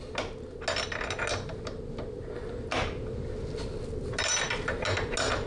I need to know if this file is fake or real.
real